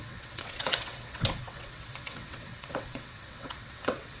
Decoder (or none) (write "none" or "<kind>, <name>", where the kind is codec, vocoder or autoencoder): vocoder, WaveNeXt